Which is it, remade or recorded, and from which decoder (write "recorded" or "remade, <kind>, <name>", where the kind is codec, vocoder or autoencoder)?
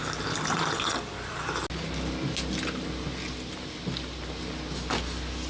recorded